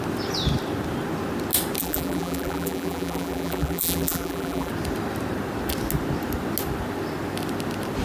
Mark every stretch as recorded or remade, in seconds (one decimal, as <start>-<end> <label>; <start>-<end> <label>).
0.0-1.8 recorded; 1.8-4.7 remade; 4.7-8.0 recorded